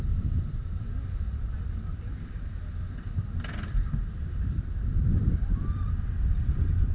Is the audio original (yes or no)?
no